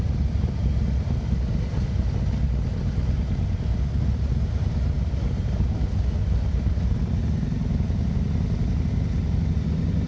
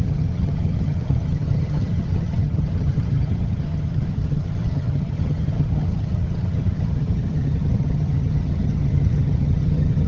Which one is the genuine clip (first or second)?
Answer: first